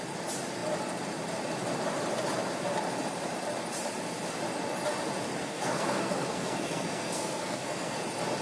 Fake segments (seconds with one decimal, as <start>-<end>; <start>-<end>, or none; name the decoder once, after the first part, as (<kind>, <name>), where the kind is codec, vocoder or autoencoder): 5.4-8.0 (codec, SNAC)